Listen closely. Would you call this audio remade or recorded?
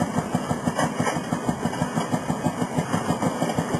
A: remade